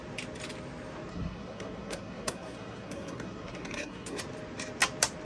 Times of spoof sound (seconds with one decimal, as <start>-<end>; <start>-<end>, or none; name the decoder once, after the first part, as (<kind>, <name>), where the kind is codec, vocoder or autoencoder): 1.1-4.2 (codec, SNAC)